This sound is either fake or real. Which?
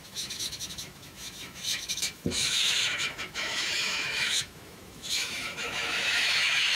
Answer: fake